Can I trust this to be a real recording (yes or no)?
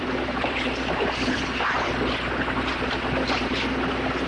no